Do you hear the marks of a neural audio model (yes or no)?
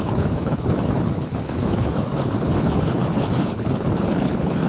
yes